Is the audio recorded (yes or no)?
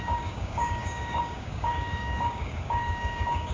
no